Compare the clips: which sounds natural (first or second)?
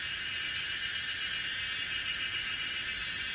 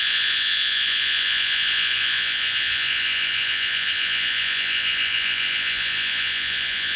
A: first